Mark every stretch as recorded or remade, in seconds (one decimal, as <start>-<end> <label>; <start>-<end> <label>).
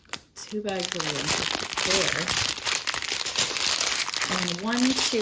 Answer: 0.0-5.2 recorded